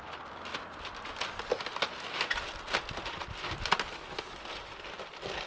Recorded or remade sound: recorded